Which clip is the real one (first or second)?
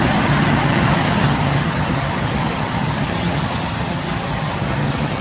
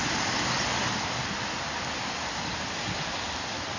second